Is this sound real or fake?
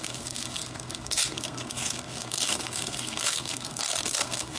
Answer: fake